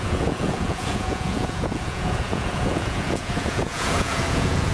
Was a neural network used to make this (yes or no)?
yes